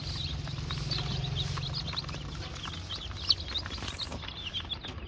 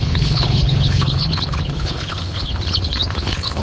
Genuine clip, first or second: first